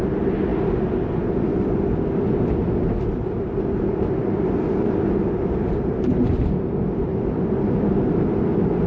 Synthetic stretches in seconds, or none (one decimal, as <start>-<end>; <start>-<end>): none

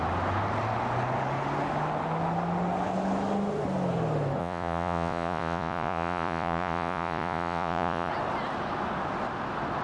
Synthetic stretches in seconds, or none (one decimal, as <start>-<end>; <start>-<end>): 4.4-8.1

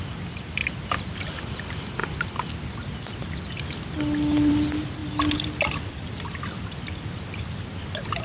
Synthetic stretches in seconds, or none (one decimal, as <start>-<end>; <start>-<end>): 5.0-5.6

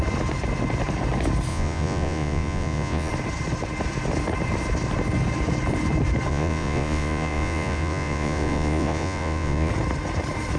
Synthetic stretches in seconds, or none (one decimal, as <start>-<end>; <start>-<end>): 1.5-3.1; 6.3-9.7

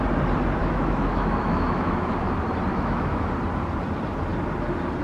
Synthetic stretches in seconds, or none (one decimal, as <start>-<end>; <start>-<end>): 0.6-2.3; 2.7-3.3

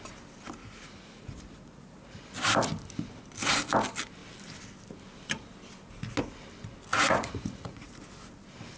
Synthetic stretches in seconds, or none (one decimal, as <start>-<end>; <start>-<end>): 0.6-2.3; 6.9-7.9

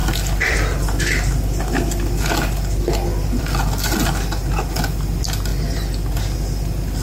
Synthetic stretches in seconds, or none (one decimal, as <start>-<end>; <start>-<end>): 0.0-3.4; 5.5-6.1

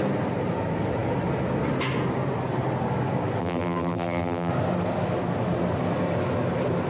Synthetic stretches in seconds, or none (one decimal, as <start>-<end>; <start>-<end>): 3.4-4.5